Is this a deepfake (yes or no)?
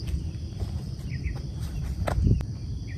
yes